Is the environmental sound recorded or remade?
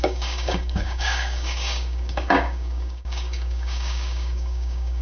remade